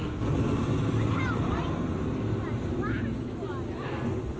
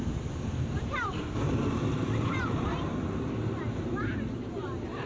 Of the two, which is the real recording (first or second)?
first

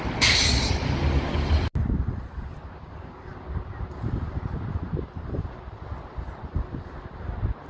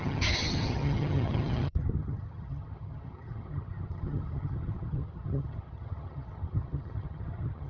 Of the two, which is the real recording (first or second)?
first